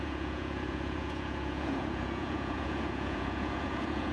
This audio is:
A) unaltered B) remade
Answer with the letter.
B